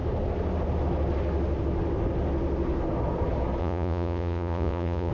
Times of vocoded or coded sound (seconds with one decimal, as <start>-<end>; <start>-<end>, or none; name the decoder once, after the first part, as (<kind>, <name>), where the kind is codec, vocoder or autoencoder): 3.6-5.1 (vocoder, Vocos)